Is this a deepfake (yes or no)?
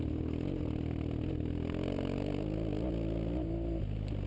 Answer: no